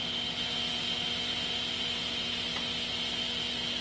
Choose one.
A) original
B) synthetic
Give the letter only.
A